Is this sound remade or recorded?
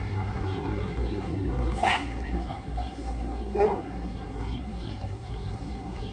remade